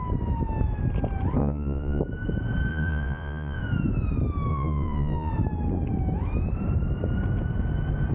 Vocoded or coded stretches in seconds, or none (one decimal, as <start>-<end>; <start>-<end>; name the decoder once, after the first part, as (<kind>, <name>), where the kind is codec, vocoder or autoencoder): 1.4-2.0 (vocoder, Vocos); 2.7-3.6; 4.5-5.3